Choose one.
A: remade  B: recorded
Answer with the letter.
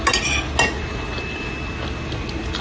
B